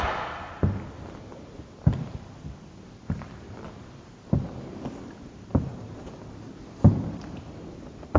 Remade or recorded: recorded